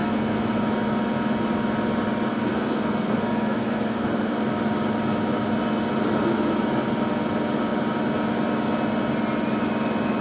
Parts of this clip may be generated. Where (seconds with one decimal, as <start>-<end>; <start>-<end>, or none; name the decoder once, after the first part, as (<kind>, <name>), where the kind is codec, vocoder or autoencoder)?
0.0-0.6 (codec, SNAC); 2.3-4.4